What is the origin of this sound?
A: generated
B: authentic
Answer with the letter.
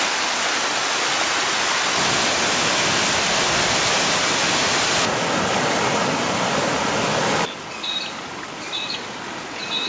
B